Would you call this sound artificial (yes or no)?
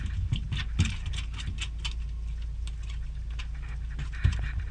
no